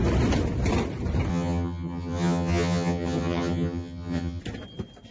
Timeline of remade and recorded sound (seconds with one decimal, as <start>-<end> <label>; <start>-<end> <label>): 0.0-1.3 recorded; 1.3-4.4 remade; 4.4-5.1 recorded